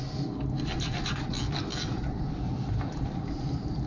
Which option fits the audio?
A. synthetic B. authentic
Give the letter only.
B